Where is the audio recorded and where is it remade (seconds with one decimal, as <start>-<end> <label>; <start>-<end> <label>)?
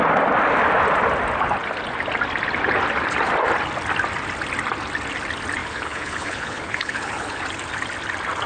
0.0-5.6 recorded; 5.6-7.4 remade; 7.4-8.5 recorded